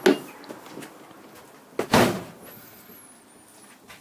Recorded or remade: recorded